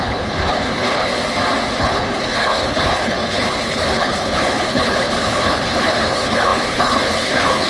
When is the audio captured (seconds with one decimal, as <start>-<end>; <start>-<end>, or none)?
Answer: 1.1-1.8